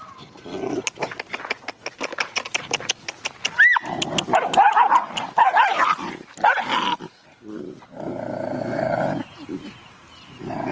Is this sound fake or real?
real